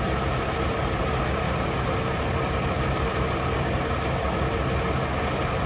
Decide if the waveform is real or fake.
real